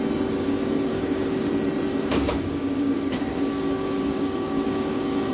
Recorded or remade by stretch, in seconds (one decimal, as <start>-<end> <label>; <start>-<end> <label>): 0.0-0.9 recorded; 0.9-1.5 remade; 1.5-2.1 recorded; 2.1-5.3 remade